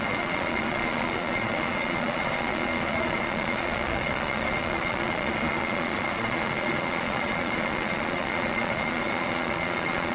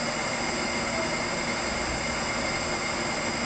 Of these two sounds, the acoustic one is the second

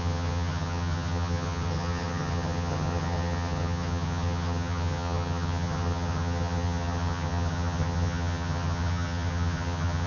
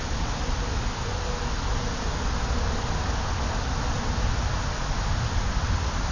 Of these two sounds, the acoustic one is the second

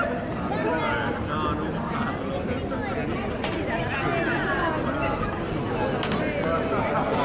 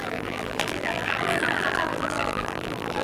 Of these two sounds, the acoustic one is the first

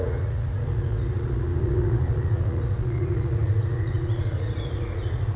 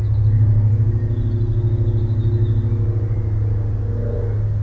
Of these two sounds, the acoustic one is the second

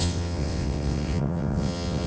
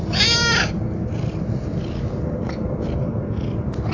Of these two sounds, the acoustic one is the second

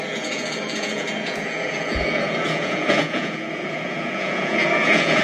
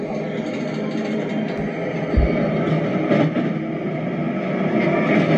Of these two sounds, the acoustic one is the second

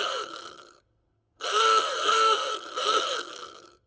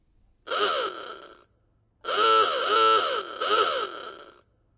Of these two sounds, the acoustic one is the second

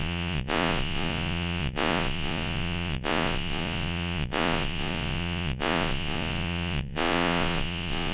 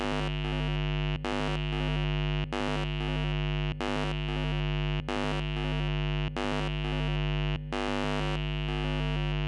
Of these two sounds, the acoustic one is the second